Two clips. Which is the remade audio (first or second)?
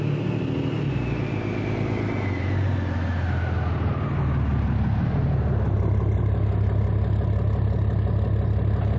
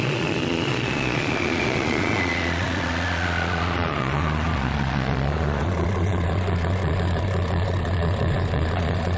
second